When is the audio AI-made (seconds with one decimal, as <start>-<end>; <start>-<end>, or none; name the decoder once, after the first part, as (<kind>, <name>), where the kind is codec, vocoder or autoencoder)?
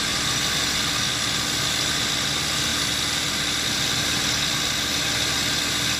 none